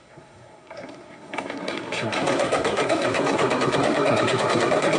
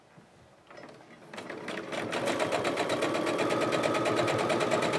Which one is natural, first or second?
second